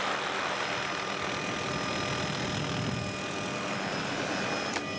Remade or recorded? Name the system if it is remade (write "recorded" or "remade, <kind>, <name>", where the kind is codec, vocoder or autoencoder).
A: recorded